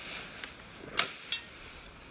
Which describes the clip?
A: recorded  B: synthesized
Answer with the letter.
A